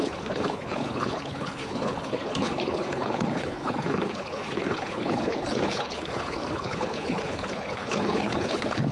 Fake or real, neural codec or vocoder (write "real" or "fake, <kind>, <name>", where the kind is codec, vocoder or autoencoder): fake, codec, HILCodec